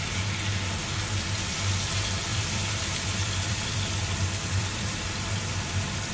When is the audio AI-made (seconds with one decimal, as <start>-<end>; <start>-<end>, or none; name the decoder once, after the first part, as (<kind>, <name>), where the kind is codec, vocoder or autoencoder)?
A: 2.3-6.1 (vocoder, BigVGAN v2)